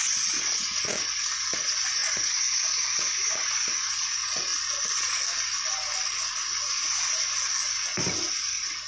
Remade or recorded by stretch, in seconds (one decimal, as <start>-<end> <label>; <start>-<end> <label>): 0.0-4.5 remade; 4.5-8.4 recorded; 8.4-8.9 remade